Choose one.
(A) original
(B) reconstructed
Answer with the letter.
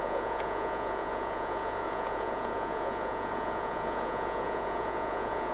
B